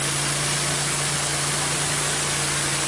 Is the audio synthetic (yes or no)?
no